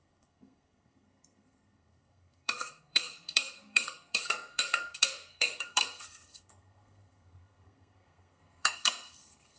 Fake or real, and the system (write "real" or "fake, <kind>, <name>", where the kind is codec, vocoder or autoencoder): fake, codec, SNAC